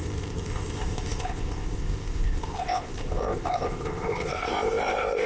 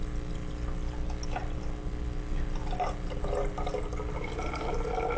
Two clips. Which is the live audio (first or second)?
second